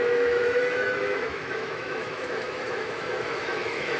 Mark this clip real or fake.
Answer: fake